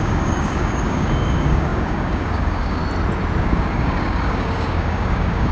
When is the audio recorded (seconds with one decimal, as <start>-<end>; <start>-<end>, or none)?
2.8-3.4